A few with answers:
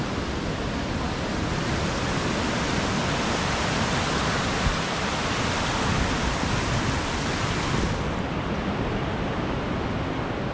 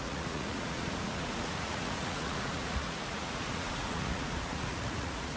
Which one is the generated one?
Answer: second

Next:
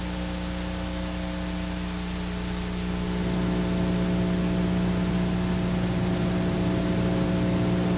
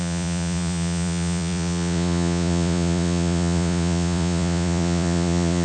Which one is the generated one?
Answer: second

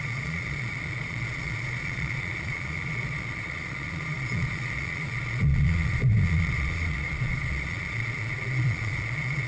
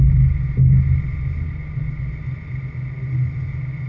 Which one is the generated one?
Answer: first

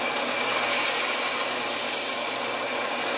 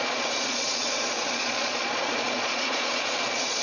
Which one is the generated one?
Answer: second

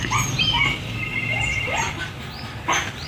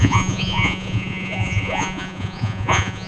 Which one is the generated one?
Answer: second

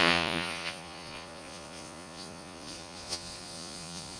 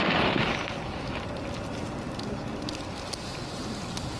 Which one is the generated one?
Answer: first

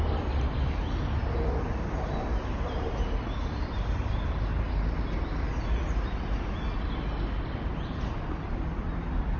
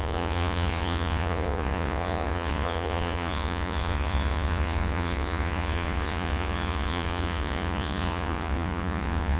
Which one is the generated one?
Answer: second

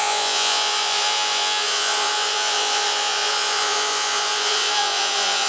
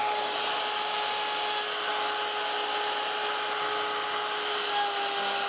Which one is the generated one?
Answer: first